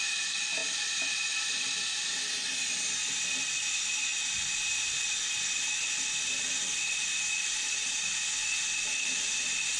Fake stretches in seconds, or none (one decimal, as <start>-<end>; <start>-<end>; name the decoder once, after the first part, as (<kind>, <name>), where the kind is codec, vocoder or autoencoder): none